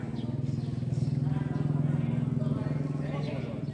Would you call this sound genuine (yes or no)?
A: yes